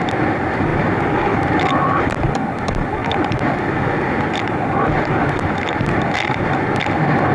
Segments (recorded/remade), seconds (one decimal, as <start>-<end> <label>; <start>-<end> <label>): 0.0-7.3 recorded